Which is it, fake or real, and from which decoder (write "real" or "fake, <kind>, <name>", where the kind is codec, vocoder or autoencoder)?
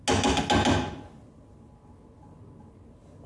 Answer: real